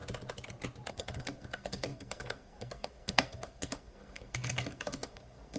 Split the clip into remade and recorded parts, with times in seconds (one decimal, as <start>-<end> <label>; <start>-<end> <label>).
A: 0.0-0.9 recorded; 0.9-5.6 remade